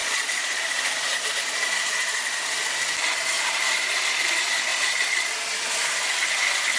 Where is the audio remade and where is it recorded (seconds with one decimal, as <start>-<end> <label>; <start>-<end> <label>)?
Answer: 0.0-0.6 remade; 0.6-4.7 recorded; 4.7-5.3 remade; 5.3-6.8 recorded